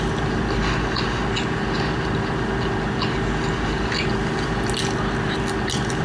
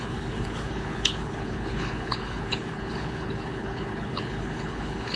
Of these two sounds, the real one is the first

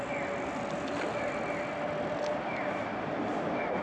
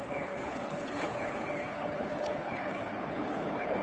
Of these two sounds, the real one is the first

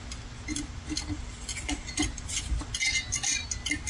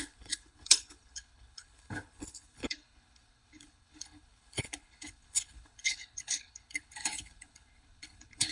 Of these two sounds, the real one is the first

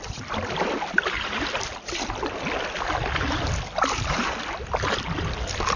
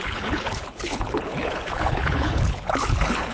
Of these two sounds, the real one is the first